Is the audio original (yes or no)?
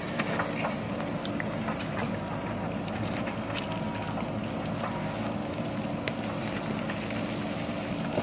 yes